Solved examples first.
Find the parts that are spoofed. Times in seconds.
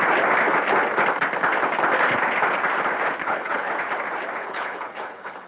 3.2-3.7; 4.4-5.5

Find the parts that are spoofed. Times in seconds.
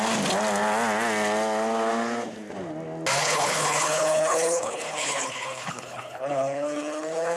3.2-7.4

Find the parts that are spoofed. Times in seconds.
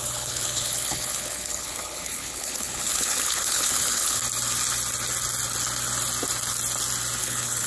0.0-4.2; 7.2-7.7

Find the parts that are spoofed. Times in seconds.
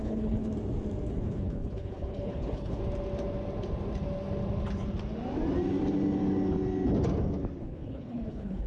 0.0-0.5; 1.1-2.8; 7.6-8.7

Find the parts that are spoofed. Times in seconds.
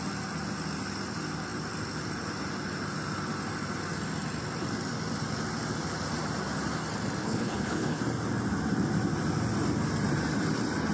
7.2-8.0